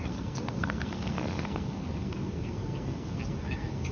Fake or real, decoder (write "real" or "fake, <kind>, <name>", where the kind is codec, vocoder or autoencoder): fake, codec, SNAC